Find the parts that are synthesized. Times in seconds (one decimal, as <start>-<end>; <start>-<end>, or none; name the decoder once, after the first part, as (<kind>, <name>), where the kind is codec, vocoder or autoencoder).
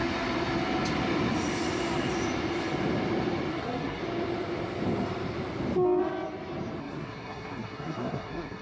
3.5-4.0 (codec, SNAC); 6.8-8.6